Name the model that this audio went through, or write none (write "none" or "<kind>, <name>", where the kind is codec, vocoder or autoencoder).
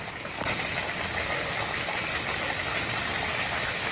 none